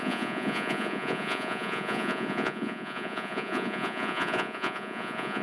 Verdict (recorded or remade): remade